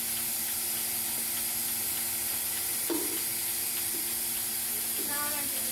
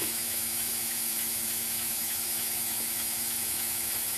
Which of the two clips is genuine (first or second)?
first